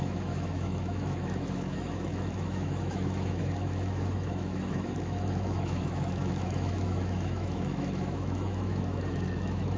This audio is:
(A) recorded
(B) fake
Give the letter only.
B